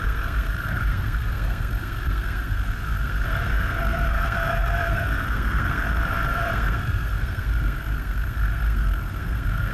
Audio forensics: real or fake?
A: fake